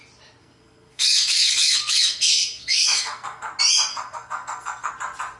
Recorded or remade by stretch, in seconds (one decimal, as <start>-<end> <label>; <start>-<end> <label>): 0.0-0.4 recorded; 0.4-3.5 remade; 3.5-3.9 recorded; 3.9-4.9 remade; 4.9-5.4 recorded

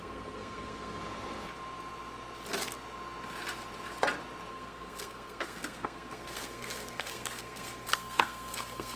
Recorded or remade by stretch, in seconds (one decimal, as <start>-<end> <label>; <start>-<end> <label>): 0.0-1.0 remade; 1.0-4.5 recorded; 4.5-9.0 remade